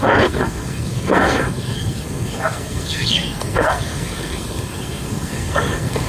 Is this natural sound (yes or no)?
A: no